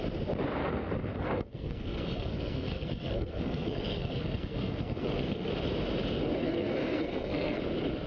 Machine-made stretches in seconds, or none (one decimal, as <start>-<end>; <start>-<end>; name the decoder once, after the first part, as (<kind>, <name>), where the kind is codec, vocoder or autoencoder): 0.6-5.5 (codec, SNAC); 6.4-7.6